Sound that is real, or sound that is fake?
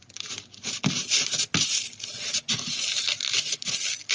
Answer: real